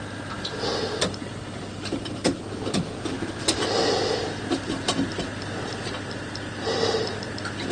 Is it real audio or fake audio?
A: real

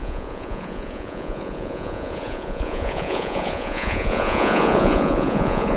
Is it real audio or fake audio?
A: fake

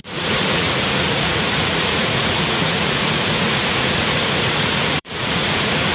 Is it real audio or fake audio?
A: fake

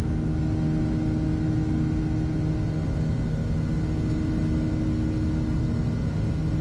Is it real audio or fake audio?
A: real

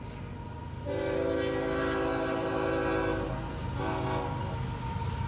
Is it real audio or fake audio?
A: real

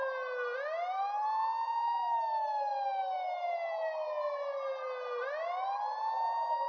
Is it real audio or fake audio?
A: real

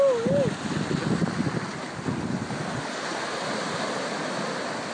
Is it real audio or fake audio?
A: real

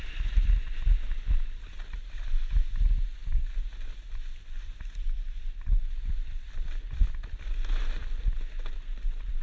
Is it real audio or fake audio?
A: real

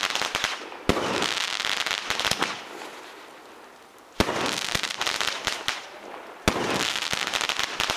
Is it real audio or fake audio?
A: real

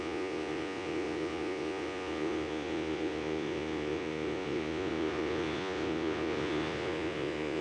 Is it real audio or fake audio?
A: fake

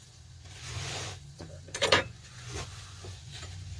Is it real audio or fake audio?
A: fake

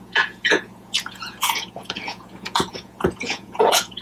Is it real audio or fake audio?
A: fake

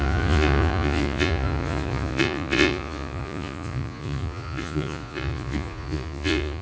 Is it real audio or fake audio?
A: fake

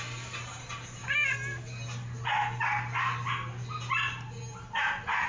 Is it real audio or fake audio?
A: real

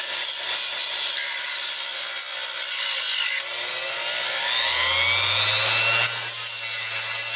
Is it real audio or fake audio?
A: real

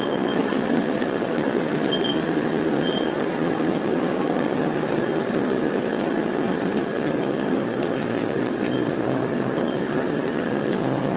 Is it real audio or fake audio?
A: fake